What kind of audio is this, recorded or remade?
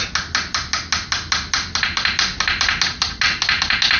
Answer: recorded